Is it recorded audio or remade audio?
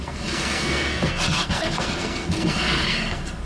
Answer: remade